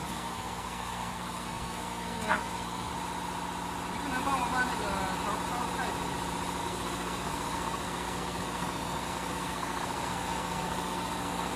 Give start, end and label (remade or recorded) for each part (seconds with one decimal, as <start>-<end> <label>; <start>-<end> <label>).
0.0-2.9 remade; 2.9-6.6 recorded; 6.6-11.6 remade